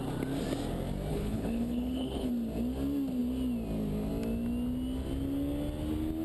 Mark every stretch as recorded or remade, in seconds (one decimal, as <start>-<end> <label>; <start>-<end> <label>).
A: 0.0-1.1 recorded; 1.1-2.3 remade; 2.3-6.2 recorded